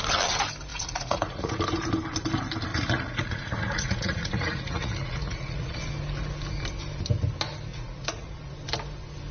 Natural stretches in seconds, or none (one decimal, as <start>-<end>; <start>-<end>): 0.0-0.7; 1.5-2.7; 5.8-7.7; 8.5-9.3